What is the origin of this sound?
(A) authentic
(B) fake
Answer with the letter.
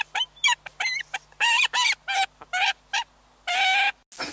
A